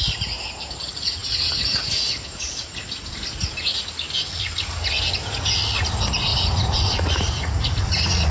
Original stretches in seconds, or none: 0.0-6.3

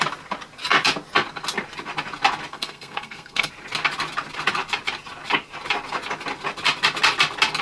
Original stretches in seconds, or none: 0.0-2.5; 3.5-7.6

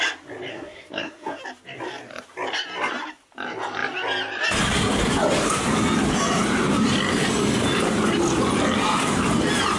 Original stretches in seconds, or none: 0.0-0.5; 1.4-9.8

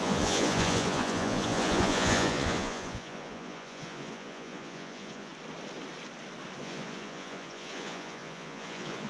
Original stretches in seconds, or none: 5.3-6.6